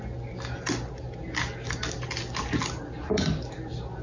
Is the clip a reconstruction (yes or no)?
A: no